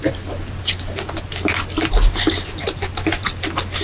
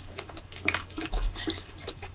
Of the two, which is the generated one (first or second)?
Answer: second